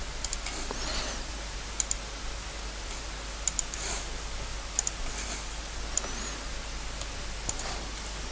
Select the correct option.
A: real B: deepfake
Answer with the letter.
A